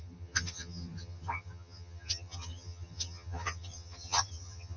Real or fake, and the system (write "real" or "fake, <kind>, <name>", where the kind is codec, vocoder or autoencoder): fake, vocoder, HiFi-GAN